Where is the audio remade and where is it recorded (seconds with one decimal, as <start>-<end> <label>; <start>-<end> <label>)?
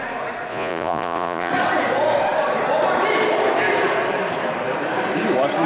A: 0.0-0.5 recorded; 0.5-1.5 remade; 1.5-5.7 recorded